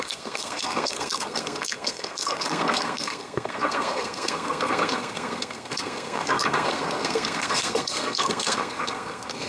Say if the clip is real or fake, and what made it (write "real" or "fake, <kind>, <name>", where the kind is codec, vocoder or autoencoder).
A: fake, codec, SNAC